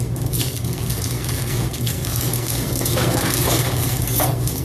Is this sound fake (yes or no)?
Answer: yes